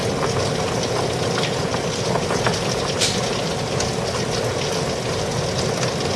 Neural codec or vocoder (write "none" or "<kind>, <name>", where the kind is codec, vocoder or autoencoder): none